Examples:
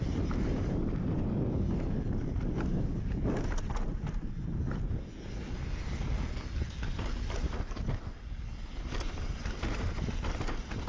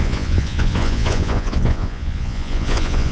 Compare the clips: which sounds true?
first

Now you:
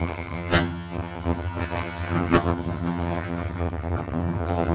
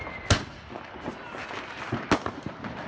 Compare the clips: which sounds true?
second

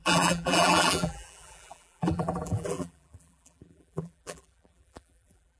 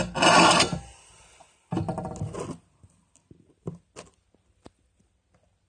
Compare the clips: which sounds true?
second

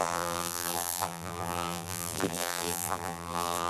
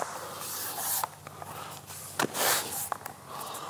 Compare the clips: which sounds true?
second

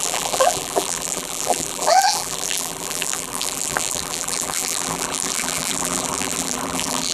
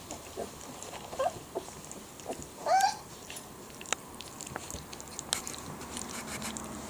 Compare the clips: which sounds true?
second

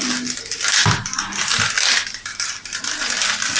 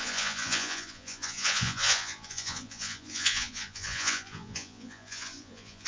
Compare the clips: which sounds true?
first